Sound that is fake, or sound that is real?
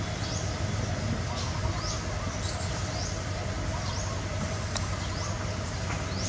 real